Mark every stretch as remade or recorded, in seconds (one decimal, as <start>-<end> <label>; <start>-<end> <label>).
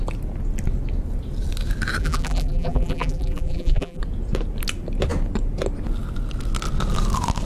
0.0-2.0 recorded; 2.0-4.0 remade; 4.0-7.5 recorded